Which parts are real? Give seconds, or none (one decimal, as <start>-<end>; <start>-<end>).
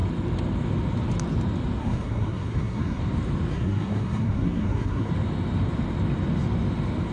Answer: 0.0-1.8; 3.0-3.5; 5.1-7.1